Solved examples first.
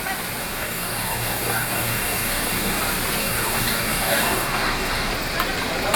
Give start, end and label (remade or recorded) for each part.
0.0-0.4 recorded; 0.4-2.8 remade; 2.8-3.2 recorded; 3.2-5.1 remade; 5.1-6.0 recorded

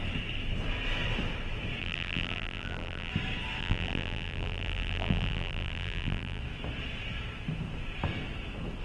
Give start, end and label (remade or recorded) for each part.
0.0-1.8 recorded; 1.8-3.1 remade; 3.1-3.6 recorded; 3.6-6.4 remade; 6.4-8.8 recorded